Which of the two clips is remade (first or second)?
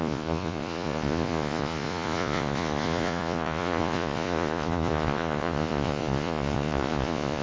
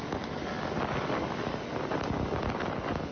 first